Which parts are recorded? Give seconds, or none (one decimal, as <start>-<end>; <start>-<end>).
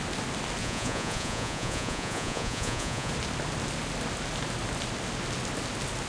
0.0-0.6; 3.1-6.1